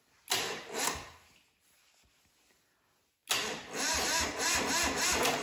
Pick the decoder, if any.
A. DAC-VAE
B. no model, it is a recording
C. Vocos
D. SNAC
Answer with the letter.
B